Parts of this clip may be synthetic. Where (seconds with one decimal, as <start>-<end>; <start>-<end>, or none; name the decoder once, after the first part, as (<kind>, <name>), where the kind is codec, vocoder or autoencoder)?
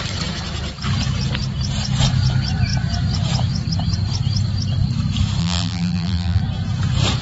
5.4-6.4 (vocoder, BigVGAN v2)